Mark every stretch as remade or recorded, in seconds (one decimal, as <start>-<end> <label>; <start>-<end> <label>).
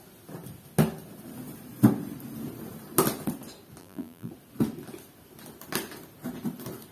0.0-3.8 recorded; 3.8-4.3 remade; 4.3-6.9 recorded